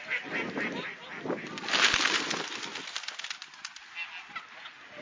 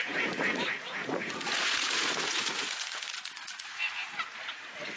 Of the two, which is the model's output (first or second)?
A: second